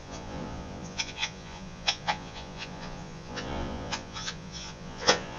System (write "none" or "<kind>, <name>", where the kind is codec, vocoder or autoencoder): vocoder, Vocos